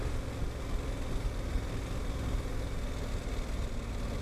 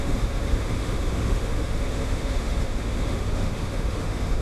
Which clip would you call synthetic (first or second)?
second